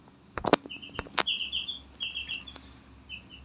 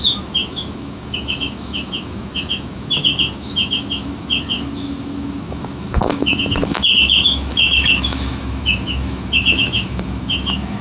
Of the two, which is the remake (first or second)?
second